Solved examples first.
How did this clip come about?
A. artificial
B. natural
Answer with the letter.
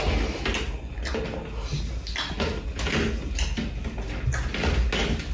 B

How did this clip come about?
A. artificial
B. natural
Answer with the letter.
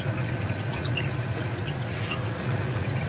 A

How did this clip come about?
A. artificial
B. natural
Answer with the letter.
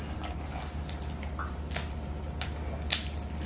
B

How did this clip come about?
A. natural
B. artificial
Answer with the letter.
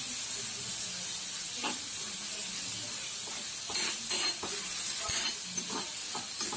A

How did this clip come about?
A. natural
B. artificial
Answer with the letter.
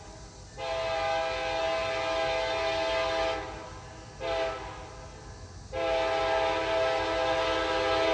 A